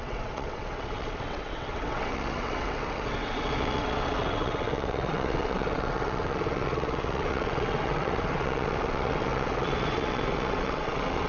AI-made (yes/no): yes